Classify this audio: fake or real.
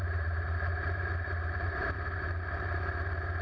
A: fake